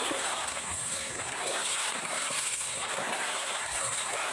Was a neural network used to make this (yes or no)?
yes